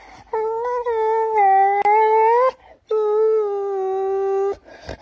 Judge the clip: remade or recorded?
recorded